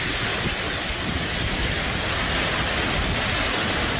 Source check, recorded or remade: recorded